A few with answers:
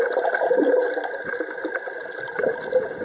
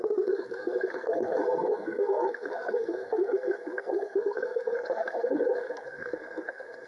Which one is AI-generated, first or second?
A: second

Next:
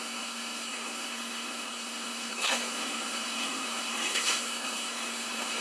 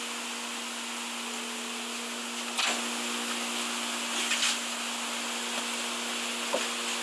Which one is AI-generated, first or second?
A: first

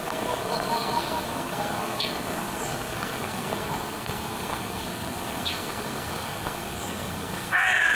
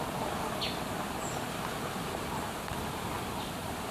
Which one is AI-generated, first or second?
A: first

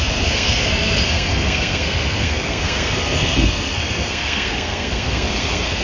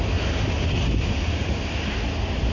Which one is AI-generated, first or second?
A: first